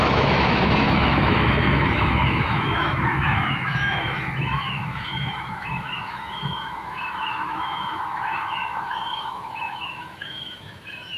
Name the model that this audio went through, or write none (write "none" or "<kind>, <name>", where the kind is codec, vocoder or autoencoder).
autoencoder, DAC-VAE